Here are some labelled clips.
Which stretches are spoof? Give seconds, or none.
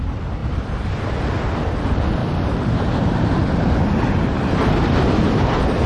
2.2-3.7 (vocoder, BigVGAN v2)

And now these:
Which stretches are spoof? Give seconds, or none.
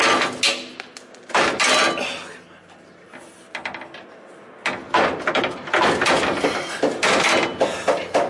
none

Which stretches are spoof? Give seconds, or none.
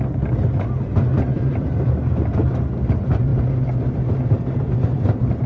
1.3-2.6 (vocoder, BigVGAN v2)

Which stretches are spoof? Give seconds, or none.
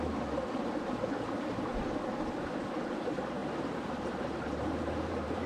3.4-5.5 (vocoder, BigVGAN v2)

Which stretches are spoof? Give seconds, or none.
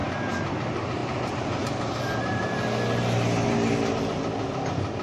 0.0-0.5 (vocoder, BigVGAN v2)